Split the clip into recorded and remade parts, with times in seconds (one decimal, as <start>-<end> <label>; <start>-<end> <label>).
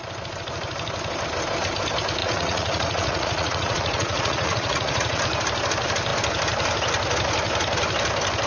0.0-2.2 recorded; 2.2-5.2 remade; 5.2-8.5 recorded